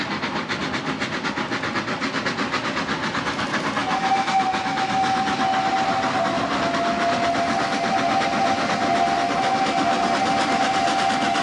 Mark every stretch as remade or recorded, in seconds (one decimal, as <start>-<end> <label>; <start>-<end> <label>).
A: 0.0-11.4 recorded